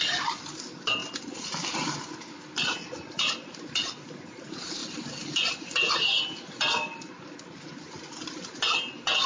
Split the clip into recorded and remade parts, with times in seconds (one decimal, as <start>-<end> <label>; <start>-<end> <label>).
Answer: 0.0-9.3 recorded